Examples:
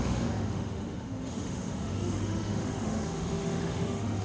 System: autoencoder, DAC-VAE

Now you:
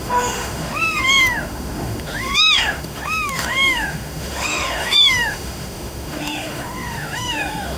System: autoencoder, DAC-VAE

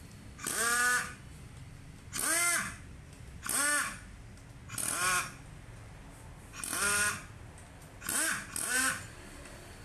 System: none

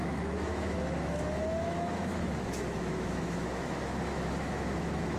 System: autoencoder, DAC-VAE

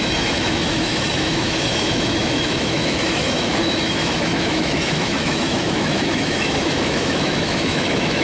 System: autoencoder, DAC-VAE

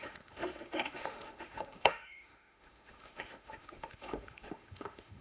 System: autoencoder, DAC-VAE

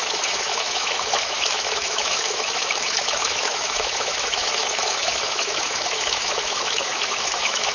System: autoencoder, DAC-VAE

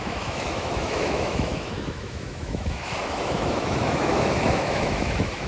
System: autoencoder, DAC-VAE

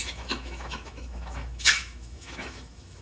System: autoencoder, DAC-VAE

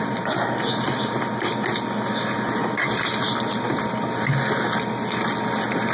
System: none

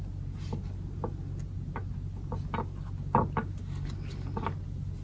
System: none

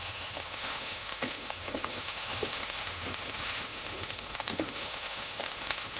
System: autoencoder, DAC-VAE